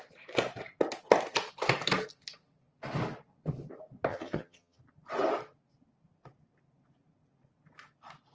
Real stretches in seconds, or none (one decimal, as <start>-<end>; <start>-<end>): 0.0-4.1; 4.8-8.3